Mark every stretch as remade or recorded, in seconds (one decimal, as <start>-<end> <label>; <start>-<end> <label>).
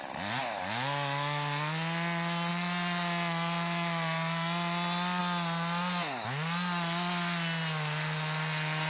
0.0-8.9 recorded